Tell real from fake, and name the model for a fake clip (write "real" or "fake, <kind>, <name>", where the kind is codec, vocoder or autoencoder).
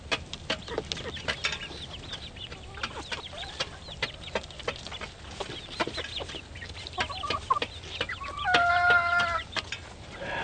real